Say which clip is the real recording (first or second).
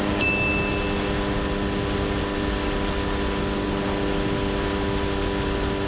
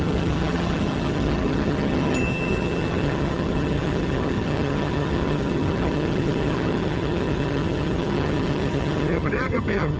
first